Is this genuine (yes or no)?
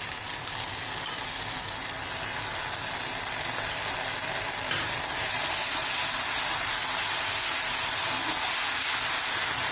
yes